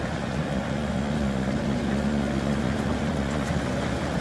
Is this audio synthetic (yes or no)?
yes